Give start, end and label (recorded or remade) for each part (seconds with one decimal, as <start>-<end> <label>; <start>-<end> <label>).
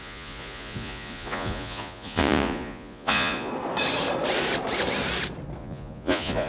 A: 0.0-3.5 remade; 3.5-5.6 recorded; 5.6-6.5 remade